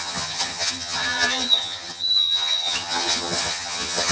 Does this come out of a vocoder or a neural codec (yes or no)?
yes